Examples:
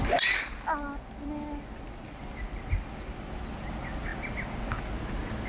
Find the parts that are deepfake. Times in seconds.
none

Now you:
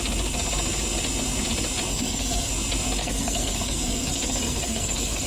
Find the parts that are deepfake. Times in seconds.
1.9-2.5 (codec, SNAC); 3.0-5.3

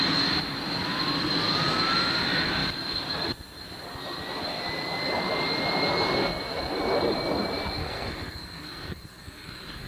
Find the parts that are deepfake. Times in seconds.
7.8-9.9 (codec, SNAC)

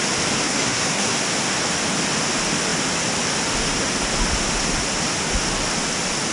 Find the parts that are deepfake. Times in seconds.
0.4-1.1 (codec, SNAC)

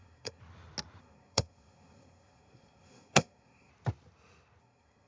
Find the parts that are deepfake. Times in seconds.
0.0-0.4 (codec, SNAC); 1.0-3.7; 4.6-5.1